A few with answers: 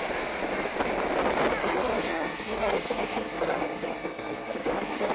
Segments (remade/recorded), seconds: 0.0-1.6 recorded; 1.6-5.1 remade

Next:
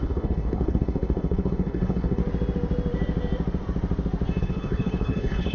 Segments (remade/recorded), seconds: 0.0-2.2 remade; 2.2-4.4 recorded; 4.4-5.5 remade

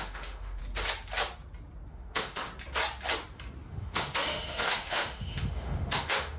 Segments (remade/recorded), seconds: 0.0-0.6 remade; 0.6-1.9 recorded; 1.9-2.5 remade; 2.5-3.7 recorded; 3.7-6.4 remade

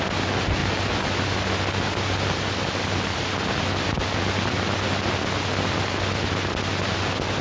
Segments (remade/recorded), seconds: 0.0-7.4 recorded